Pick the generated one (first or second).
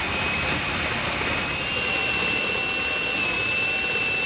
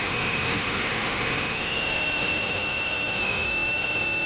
second